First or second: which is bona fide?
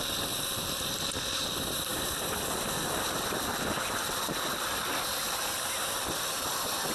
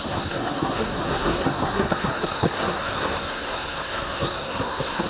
first